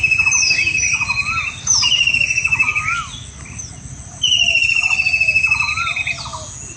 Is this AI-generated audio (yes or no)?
no